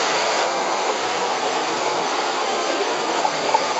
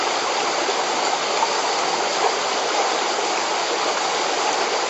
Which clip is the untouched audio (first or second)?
second